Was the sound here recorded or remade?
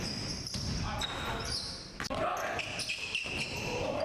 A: recorded